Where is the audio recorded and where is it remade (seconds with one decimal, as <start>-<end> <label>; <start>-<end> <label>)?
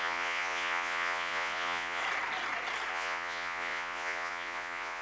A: 0.0-2.0 remade; 2.0-2.9 recorded; 2.9-5.0 remade